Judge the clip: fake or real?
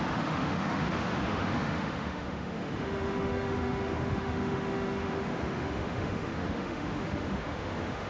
fake